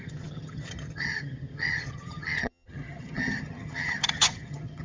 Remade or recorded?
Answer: remade